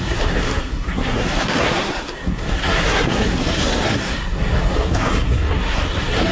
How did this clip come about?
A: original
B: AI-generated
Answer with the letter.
B